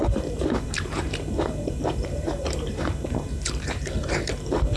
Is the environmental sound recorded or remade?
remade